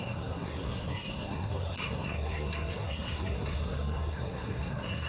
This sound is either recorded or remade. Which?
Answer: remade